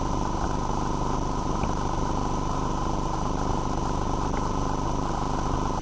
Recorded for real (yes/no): yes